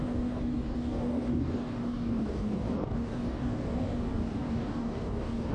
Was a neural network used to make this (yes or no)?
yes